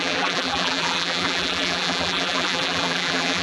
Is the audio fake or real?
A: fake